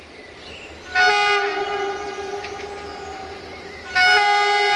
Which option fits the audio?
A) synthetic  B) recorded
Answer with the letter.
B